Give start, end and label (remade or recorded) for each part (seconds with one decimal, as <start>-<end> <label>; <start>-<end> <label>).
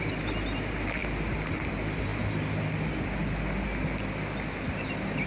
0.0-5.3 recorded